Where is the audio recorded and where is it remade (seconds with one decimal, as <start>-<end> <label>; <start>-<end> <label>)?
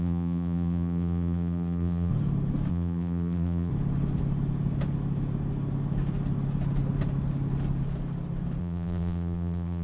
0.0-2.1 remade; 2.1-2.7 recorded; 2.7-3.7 remade; 3.7-8.6 recorded; 8.6-9.8 remade